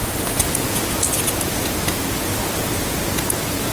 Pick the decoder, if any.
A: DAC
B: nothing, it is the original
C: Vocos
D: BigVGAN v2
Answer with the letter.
C